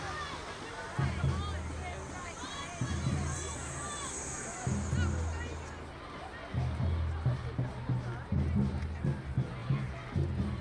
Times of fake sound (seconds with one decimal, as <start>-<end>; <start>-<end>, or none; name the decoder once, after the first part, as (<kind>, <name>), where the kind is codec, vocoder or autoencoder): none